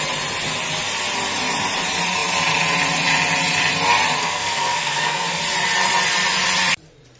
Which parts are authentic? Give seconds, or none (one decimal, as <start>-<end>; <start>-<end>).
0.0-4.2; 5.4-7.2